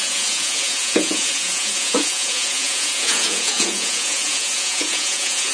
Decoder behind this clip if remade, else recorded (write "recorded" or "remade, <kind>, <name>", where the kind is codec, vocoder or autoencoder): remade, vocoder, Vocos